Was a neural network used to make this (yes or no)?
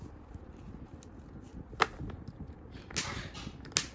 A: no